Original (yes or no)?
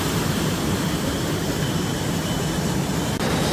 no